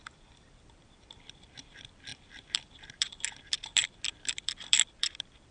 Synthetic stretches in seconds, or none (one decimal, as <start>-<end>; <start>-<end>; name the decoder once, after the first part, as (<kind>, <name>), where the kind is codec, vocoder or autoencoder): 0.0-5.5 (vocoder, BigVGAN v2)